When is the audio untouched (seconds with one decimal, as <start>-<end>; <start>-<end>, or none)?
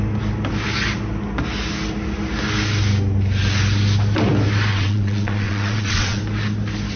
0.0-4.7; 6.2-7.0